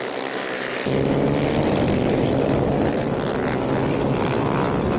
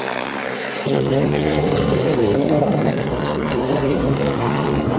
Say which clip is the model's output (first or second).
second